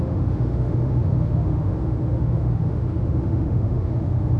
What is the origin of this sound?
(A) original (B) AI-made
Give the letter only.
B